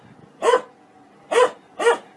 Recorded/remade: recorded